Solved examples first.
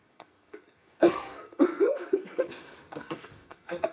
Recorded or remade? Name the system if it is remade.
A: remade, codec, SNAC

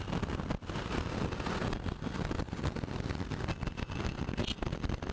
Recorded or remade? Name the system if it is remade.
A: recorded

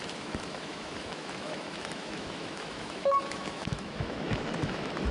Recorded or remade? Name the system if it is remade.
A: remade, autoencoder, DAC-VAE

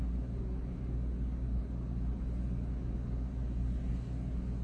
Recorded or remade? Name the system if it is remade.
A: recorded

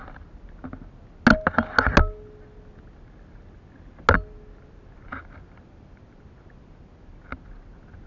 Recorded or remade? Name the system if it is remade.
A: recorded